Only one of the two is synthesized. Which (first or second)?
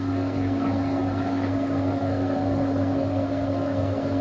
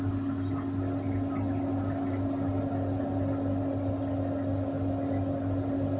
first